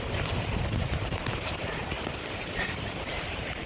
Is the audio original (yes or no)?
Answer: no